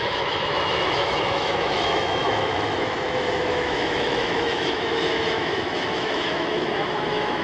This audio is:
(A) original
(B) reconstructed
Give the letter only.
B